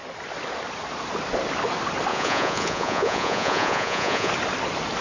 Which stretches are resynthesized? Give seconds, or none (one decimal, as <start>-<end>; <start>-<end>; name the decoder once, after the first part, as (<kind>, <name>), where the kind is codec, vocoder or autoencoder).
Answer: 2.1-4.3 (vocoder, Vocos)

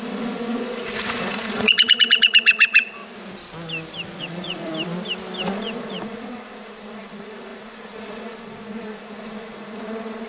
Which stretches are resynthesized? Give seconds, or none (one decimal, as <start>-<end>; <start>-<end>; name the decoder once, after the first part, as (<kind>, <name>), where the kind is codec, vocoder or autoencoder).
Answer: 0.0-3.0 (vocoder, Vocos); 4.2-4.7; 5.4-10.3